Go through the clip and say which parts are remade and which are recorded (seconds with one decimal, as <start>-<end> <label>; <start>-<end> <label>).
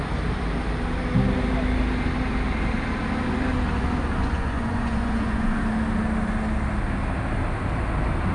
0.0-4.2 recorded; 4.2-5.6 remade; 5.6-8.3 recorded